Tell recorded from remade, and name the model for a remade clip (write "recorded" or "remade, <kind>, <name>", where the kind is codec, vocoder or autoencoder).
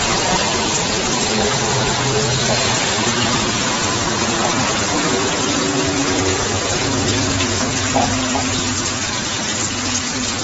recorded